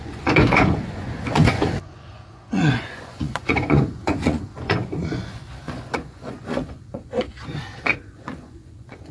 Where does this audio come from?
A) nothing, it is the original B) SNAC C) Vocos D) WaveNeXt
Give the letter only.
C